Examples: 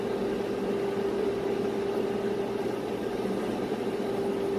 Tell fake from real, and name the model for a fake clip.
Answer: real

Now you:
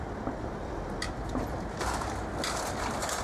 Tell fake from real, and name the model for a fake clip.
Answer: real